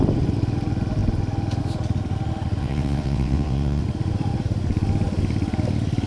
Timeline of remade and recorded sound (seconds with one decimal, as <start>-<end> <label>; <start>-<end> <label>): 0.0-2.6 recorded; 2.6-3.8 remade; 3.8-6.1 recorded